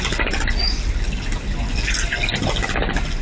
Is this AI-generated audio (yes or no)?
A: no